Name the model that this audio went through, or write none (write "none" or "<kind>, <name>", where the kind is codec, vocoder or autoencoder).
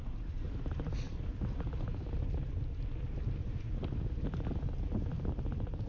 none